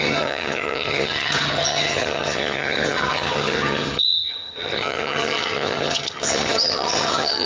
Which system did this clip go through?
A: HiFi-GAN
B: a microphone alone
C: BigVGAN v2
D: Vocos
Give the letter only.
A